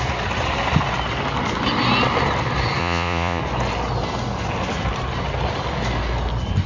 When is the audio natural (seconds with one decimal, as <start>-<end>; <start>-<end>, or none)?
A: 0.0-2.8; 3.4-6.7